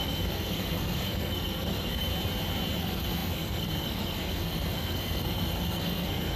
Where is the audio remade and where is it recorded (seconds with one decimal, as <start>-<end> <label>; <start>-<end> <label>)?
0.0-2.1 remade; 2.1-2.8 recorded; 2.8-6.4 remade